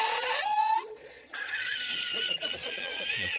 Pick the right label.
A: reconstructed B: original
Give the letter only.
A